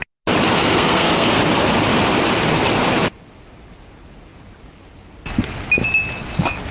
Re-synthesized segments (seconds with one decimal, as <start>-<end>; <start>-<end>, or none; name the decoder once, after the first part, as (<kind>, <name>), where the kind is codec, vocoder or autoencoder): 0.5-1.4 (codec, SNAC)

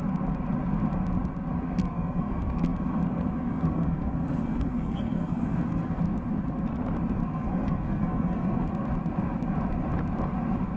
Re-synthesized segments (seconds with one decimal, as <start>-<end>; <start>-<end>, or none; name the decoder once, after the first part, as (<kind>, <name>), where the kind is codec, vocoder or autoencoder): 1.8-6.0 (codec, SNAC); 7.2-8.7

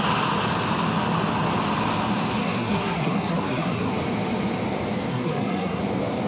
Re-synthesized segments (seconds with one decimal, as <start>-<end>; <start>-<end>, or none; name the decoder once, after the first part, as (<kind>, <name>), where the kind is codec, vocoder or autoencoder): 2.4-3.9 (codec, SNAC); 5.1-5.8

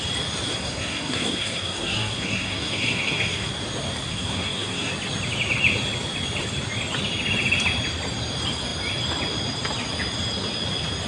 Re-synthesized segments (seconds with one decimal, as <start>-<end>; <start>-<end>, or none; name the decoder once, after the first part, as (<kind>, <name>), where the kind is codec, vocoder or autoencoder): 0.5-3.5 (codec, SNAC); 4.1-4.9

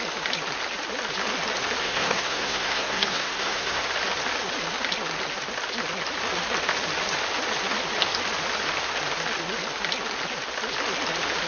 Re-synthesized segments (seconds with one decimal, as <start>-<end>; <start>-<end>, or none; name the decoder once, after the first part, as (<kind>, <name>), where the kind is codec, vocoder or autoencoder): 1.8-3.8 (codec, SNAC)

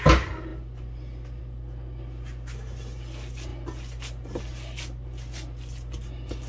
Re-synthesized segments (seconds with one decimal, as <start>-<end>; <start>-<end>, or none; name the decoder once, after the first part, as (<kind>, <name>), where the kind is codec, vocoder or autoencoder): none

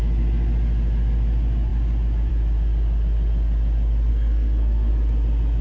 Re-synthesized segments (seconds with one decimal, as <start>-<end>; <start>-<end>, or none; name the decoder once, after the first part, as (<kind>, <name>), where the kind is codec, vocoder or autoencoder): 4.1-4.9 (codec, SNAC)

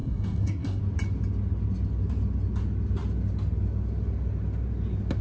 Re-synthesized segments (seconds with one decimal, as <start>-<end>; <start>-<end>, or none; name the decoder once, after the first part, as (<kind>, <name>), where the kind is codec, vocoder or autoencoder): 0.0-0.8 (codec, SNAC)